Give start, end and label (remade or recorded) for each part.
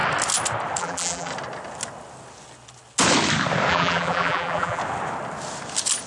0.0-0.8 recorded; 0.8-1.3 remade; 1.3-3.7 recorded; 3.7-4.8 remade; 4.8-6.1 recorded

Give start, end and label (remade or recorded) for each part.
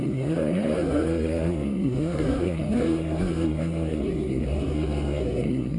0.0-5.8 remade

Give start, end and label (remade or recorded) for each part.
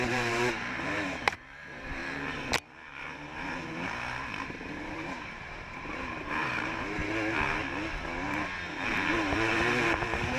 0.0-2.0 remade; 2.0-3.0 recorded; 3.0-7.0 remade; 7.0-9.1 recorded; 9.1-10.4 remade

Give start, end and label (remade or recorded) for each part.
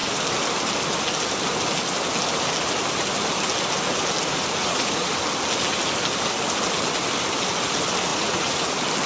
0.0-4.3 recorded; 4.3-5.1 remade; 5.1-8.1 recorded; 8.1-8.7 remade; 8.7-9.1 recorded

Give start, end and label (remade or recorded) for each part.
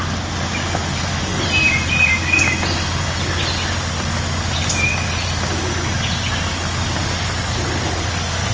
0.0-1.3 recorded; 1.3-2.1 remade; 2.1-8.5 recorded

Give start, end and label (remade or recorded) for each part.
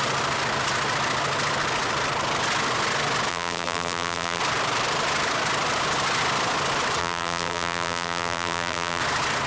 0.0-3.3 recorded; 3.3-4.4 remade; 4.4-7.0 recorded; 7.0-9.0 remade; 9.0-9.5 recorded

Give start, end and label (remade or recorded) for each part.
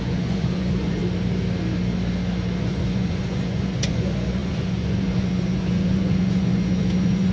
0.0-1.0 remade; 1.0-2.6 recorded; 2.6-7.3 remade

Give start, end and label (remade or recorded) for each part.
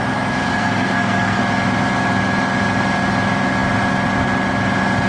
0.0-0.5 recorded; 0.5-1.4 remade; 1.4-5.1 recorded